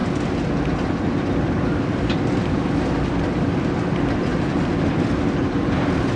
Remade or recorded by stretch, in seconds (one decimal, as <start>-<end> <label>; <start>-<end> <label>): 0.0-1.3 recorded; 1.3-4.3 remade; 4.3-4.9 recorded; 4.9-6.2 remade